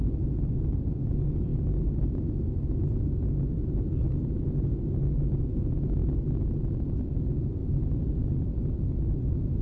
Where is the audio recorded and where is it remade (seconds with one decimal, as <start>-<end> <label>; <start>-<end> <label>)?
0.0-9.6 recorded